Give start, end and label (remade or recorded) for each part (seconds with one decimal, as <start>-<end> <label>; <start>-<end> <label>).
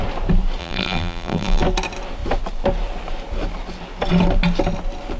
0.0-0.6 recorded; 0.6-1.6 remade; 1.6-5.2 recorded